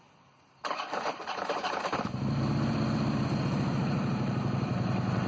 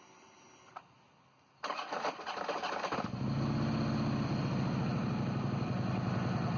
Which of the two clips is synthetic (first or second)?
first